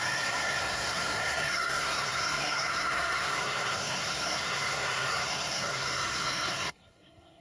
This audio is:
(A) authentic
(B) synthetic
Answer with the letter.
B